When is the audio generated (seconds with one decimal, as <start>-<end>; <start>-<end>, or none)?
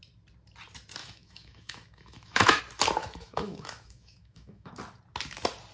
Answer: 1.0-2.6; 3.0-4.7